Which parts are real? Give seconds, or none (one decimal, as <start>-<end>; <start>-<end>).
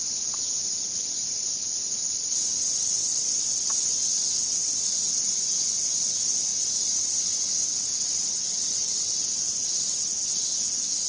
0.0-11.1